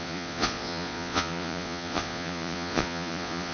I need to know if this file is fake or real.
fake